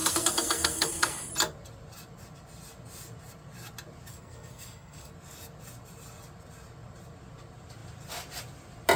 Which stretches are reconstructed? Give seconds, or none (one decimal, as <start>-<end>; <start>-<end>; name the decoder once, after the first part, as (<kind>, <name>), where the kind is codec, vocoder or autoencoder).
0.0-1.3 (codec, SNAC); 4.1-5.1